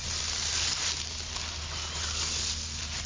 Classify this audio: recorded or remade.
recorded